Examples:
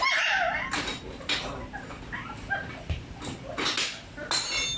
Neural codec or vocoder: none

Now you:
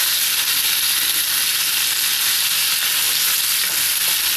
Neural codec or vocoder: none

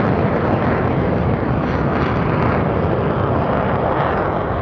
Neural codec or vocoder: none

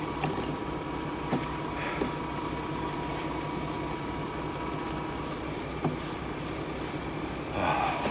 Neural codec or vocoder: none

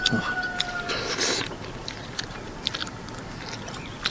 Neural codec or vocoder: vocoder, BigVGAN v2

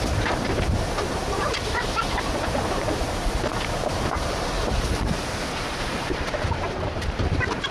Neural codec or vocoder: vocoder, BigVGAN v2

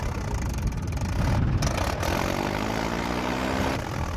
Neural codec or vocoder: none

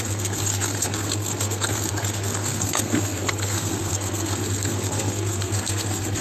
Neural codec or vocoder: codec, SNAC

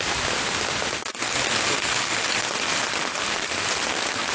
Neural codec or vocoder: none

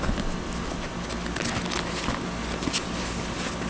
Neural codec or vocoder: none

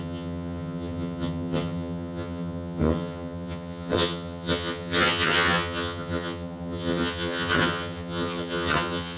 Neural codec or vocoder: vocoder, HiFi-GAN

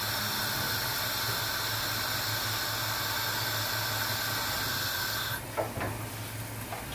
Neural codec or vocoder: none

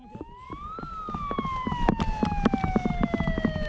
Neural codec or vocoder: none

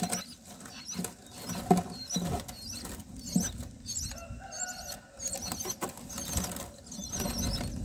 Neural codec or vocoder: none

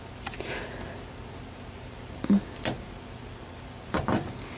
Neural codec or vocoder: none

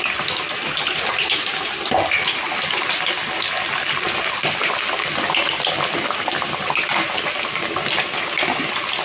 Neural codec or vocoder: none